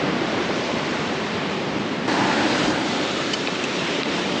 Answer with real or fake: fake